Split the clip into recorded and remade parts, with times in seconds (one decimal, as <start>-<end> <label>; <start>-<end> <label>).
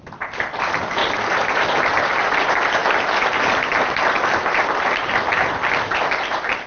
0.0-1.0 recorded; 1.0-1.6 remade; 1.6-2.8 recorded; 2.8-3.7 remade; 3.7-5.0 recorded; 5.0-5.6 remade; 5.6-6.7 recorded